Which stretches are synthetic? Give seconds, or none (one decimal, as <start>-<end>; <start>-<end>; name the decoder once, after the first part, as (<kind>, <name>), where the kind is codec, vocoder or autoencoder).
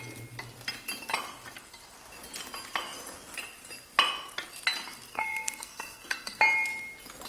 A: 5.1-6.4 (codec, SNAC)